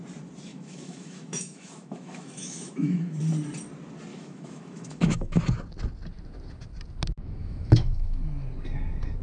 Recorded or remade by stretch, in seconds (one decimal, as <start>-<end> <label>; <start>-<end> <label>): 0.0-0.5 recorded; 0.5-3.2 remade; 3.2-4.1 recorded; 4.1-5.4 remade; 5.4-7.2 recorded; 7.2-8.2 remade; 8.2-9.2 recorded